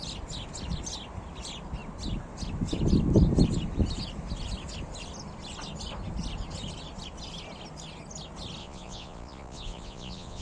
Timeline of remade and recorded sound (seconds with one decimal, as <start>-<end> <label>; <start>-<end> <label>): 0.0-8.6 recorded; 8.6-10.4 remade